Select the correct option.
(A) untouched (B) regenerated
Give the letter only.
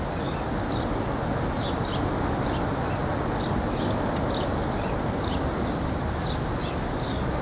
A